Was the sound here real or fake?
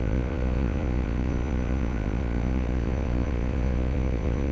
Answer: fake